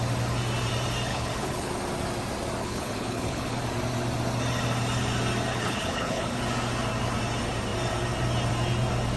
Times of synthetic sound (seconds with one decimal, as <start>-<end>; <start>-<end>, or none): 1.1-1.7; 2.6-3.6; 5.5-6.4